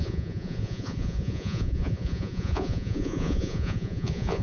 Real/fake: fake